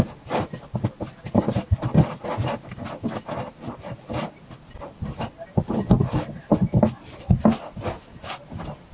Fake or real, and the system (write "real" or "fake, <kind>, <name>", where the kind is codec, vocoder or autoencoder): real